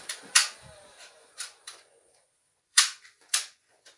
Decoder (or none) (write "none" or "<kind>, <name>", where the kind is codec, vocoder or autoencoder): vocoder, Vocos